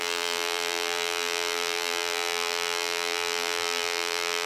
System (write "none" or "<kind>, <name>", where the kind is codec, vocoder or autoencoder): vocoder, BigVGAN v2